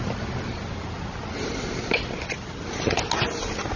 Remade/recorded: recorded